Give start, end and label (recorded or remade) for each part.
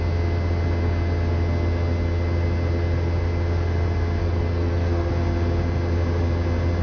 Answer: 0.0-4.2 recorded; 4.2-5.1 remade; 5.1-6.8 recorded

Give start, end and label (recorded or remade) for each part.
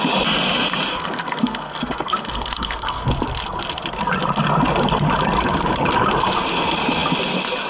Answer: 0.0-0.9 recorded; 0.9-3.1 remade; 3.1-7.7 recorded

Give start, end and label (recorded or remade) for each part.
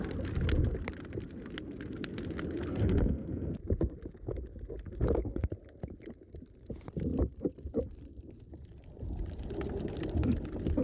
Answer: 0.0-2.7 recorded; 2.7-3.5 remade; 3.5-10.8 recorded